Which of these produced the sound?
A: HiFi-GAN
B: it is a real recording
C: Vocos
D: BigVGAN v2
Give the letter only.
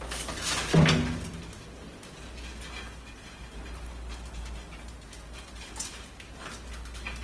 B